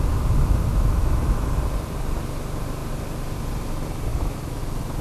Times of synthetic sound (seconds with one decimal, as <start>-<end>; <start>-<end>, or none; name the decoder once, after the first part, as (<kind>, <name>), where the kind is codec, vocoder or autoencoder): 0.7-1.5 (autoencoder, DAC-VAE); 4.1-4.6